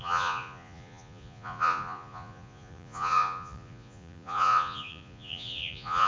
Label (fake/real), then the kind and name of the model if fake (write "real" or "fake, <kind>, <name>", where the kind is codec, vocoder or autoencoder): fake, vocoder, Vocos